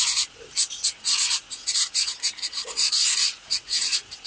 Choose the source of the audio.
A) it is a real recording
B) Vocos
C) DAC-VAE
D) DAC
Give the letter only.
B